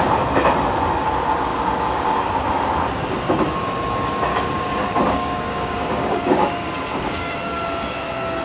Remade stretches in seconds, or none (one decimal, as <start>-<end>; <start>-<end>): 1.5-2.3; 4.3-7.6